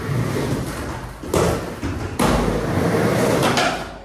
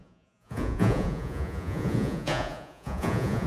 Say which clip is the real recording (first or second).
first